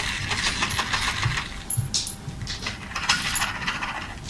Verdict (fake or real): real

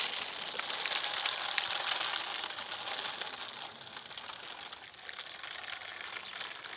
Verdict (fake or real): real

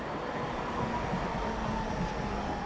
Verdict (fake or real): real